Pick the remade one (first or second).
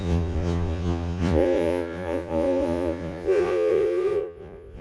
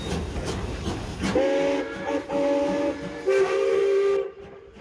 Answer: first